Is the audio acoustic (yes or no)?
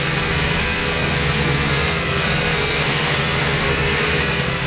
no